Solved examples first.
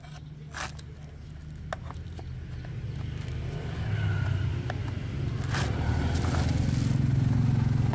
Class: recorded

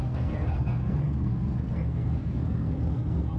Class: remade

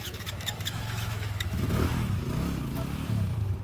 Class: remade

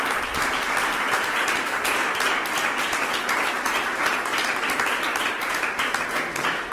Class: recorded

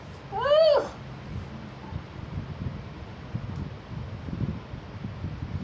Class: recorded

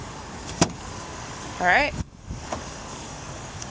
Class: remade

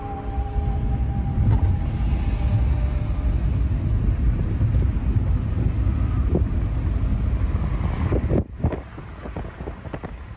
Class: recorded